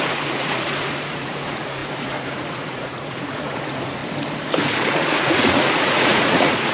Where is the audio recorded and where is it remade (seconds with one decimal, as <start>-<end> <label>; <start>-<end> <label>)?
0.0-4.0 remade; 4.0-4.9 recorded; 4.9-6.7 remade